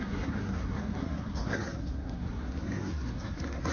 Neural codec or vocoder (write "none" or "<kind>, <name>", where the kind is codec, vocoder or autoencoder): codec, SNAC